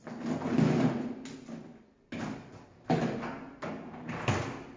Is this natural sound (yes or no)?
yes